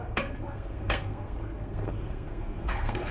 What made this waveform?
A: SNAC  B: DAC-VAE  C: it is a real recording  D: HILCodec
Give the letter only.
A